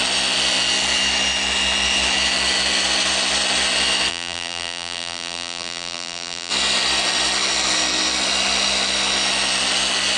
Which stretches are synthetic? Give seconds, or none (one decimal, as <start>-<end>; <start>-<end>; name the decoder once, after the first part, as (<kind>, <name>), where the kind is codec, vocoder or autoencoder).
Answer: 4.1-6.5 (vocoder, BigVGAN v2)